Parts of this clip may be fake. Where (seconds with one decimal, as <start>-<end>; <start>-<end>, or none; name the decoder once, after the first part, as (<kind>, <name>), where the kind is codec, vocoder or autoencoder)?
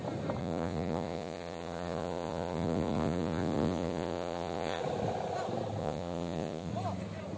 0.4-4.8 (vocoder, Vocos); 5.8-6.7